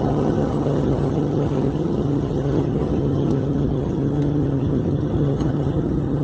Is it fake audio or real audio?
fake